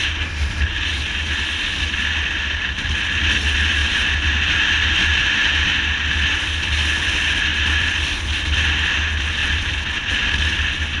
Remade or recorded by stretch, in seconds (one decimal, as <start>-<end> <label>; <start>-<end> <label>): 0.0-7.5 recorded; 7.5-8.3 remade; 8.3-9.4 recorded; 9.4-10.3 remade; 10.3-11.0 recorded

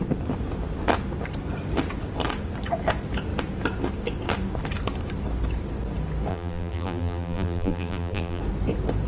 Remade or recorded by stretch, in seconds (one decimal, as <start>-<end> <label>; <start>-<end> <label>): 0.0-6.3 recorded; 6.3-8.4 remade; 8.4-9.1 recorded